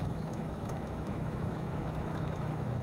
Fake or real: fake